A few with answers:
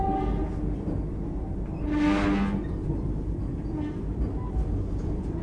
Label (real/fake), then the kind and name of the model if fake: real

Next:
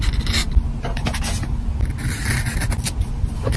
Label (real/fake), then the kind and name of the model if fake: real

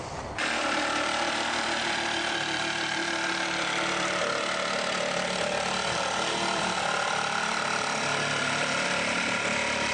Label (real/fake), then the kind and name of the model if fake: fake, vocoder, BigVGAN v2